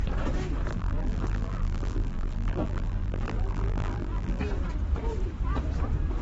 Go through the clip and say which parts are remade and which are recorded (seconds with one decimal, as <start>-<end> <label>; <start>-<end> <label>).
0.0-0.7 recorded; 0.7-4.4 remade; 4.4-6.2 recorded